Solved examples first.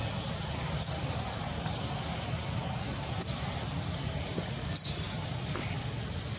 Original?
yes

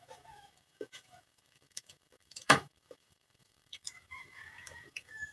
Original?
no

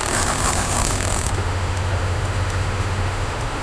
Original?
no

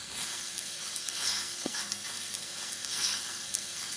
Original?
no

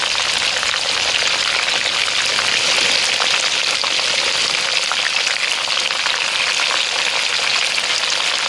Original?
yes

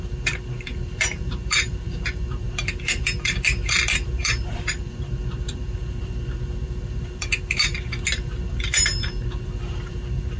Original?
no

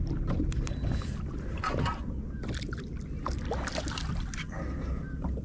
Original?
yes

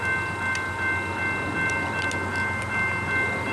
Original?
yes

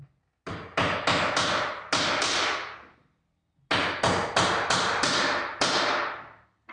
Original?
yes